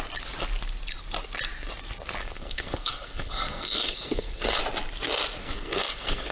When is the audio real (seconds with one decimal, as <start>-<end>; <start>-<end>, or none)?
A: 0.0-2.2; 4.6-5.4